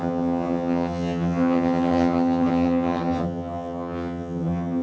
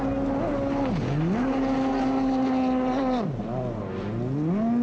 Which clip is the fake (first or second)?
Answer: first